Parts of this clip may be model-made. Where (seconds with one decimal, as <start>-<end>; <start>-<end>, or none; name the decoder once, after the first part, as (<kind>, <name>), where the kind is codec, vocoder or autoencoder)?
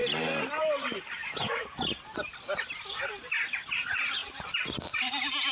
none